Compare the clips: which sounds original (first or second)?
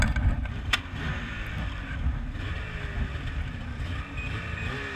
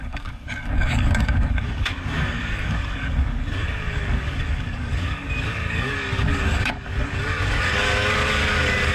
first